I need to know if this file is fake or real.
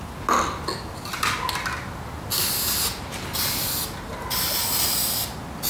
real